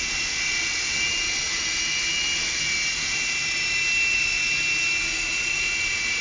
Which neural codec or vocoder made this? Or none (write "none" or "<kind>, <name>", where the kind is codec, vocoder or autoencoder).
none